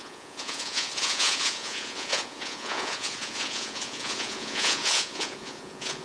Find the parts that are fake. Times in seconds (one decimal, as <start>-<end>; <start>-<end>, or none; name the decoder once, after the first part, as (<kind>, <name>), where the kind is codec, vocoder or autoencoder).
0.0-6.0 (vocoder, Vocos)